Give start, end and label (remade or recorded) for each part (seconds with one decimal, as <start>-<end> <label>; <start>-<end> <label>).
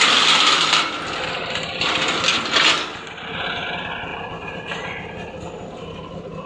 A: 0.0-6.5 recorded